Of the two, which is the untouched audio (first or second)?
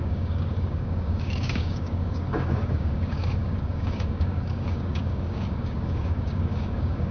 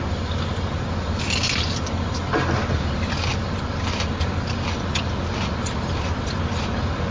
second